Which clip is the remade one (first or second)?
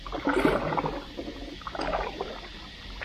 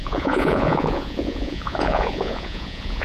second